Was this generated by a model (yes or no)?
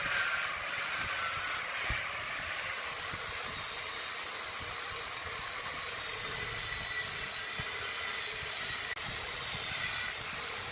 no